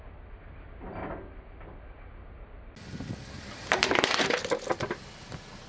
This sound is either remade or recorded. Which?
recorded